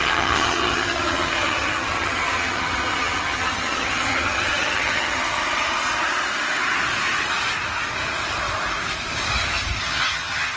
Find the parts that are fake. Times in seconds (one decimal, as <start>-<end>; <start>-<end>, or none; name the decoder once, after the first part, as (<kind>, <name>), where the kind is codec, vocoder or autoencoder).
0.0-5.4 (vocoder, HiFi-GAN); 9.8-10.6